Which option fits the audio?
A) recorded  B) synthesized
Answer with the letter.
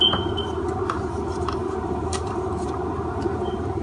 B